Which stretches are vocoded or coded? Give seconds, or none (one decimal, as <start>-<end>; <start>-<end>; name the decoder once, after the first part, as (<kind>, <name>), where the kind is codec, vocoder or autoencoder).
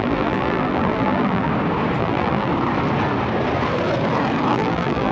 0.0-1.5 (vocoder, BigVGAN v2); 2.0-2.5; 4.5-5.1